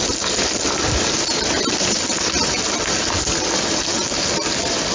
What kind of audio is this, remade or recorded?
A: recorded